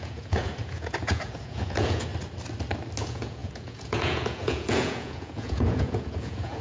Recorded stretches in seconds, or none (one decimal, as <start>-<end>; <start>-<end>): 2.1-3.0